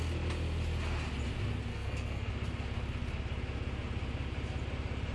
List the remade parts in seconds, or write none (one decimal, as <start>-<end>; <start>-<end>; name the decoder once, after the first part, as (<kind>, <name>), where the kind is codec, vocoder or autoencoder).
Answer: 1.7-2.3 (codec, SNAC)